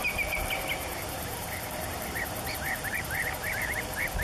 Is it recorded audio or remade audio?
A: remade